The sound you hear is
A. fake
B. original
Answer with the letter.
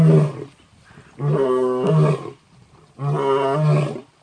B